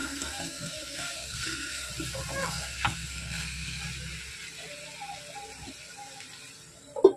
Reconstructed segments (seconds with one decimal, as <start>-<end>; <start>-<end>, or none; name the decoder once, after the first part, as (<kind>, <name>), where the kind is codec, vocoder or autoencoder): 0.0-1.9 (codec, SNAC); 2.4-3.8